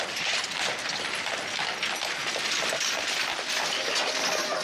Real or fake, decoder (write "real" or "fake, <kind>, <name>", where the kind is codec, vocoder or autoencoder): real